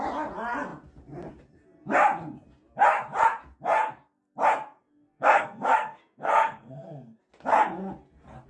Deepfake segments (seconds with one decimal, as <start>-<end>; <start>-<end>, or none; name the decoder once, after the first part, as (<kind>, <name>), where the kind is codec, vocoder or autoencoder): 4.8-7.2 (codec, SNAC)